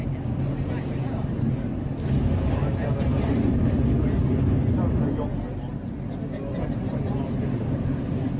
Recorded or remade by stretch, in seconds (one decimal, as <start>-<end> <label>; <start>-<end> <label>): 0.0-8.4 recorded